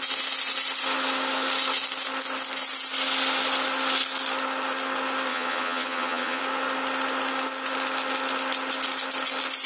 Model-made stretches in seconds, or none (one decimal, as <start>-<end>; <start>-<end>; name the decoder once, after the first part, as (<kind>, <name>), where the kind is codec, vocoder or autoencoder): 5.3-6.4 (vocoder, HiFi-GAN)